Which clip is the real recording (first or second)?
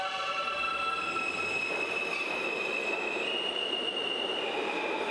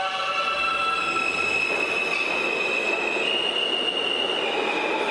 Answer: second